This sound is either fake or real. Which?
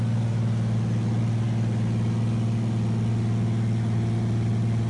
real